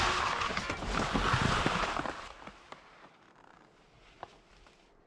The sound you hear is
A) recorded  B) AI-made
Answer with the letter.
A